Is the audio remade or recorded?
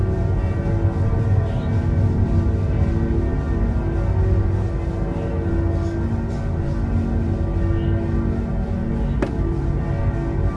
recorded